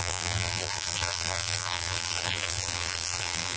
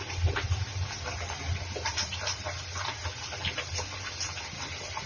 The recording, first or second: second